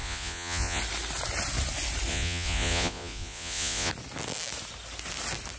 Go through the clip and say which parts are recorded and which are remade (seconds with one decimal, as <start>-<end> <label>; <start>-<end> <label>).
0.0-0.8 remade; 0.8-2.1 recorded; 2.1-3.9 remade; 3.9-5.6 recorded